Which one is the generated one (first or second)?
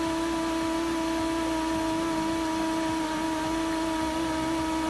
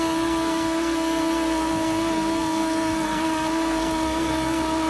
second